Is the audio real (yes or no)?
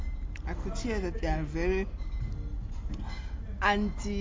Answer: yes